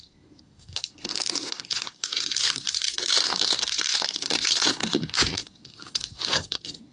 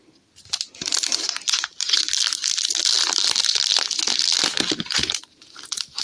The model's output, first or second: first